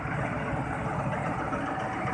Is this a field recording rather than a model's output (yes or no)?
yes